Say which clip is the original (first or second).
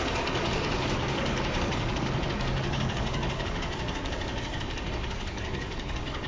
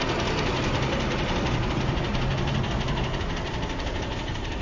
second